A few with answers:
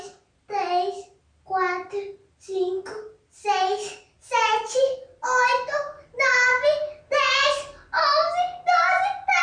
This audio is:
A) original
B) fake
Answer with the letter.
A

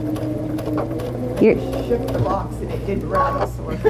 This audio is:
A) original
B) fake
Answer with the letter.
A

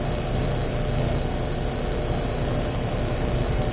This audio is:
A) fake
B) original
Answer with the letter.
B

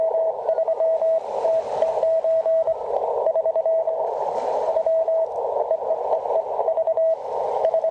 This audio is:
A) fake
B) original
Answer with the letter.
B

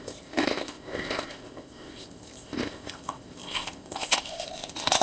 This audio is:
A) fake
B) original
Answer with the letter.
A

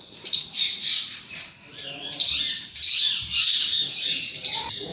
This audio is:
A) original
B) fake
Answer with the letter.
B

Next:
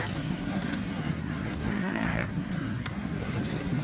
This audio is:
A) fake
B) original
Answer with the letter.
A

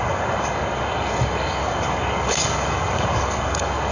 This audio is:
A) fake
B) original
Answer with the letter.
A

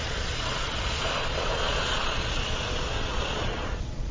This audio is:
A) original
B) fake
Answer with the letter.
B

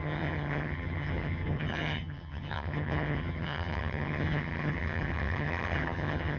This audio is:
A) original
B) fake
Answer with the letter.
B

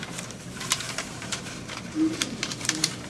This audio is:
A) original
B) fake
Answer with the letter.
B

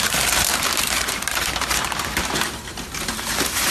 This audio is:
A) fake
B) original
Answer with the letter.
A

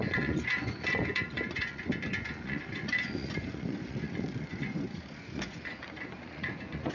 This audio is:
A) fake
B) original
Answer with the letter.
A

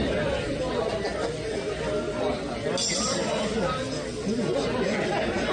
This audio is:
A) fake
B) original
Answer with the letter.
B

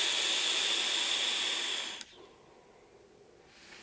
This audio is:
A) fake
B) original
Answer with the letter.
B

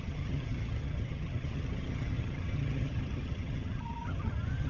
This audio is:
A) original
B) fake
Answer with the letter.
B